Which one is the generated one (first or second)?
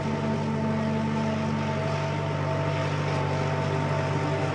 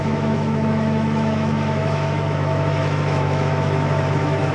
second